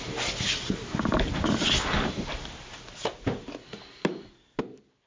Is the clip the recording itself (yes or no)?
yes